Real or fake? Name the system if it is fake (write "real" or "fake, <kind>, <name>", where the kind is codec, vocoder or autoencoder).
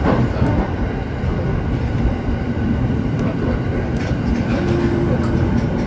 real